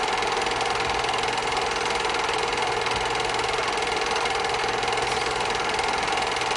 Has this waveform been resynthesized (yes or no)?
no